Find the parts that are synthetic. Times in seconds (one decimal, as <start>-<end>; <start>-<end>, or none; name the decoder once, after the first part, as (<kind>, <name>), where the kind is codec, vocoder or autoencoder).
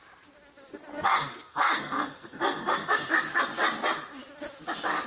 0.9-3.1 (codec, SNAC)